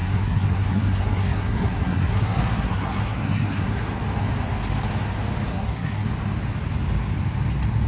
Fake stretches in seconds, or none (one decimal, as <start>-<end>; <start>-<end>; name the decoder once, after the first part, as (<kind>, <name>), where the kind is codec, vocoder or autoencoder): 0.0-3.8 (codec, SNAC); 5.5-6.1